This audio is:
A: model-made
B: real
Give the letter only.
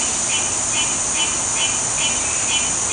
B